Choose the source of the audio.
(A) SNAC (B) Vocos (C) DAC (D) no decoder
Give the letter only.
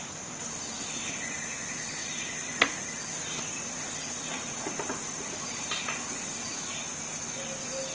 D